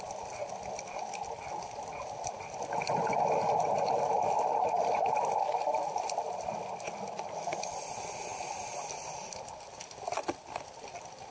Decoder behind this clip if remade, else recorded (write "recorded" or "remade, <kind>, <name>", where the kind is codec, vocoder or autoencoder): recorded